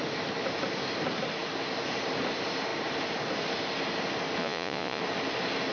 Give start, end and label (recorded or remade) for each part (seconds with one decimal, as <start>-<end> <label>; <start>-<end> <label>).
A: 0.0-4.4 recorded; 4.4-5.0 remade; 5.0-5.7 recorded